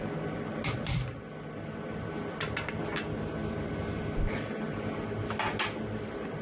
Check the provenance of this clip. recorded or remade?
recorded